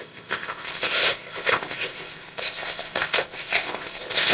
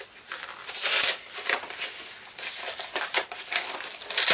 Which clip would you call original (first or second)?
second